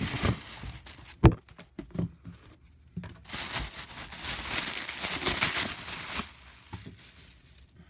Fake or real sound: real